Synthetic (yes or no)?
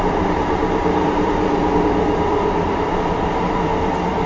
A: yes